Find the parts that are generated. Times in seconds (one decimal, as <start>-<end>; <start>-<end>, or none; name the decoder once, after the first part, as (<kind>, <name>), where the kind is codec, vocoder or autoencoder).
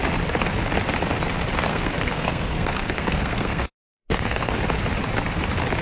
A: 1.7-4.5 (codec, SNAC)